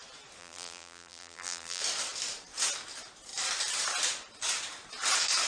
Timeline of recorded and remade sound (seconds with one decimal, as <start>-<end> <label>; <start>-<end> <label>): 0.0-0.4 recorded; 0.4-1.8 remade; 1.8-5.5 recorded